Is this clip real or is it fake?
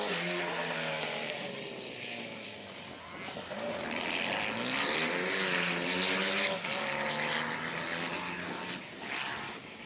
real